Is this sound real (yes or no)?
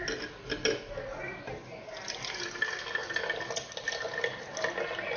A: yes